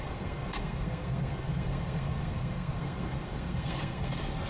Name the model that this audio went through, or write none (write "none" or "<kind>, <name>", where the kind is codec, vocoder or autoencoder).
codec, SNAC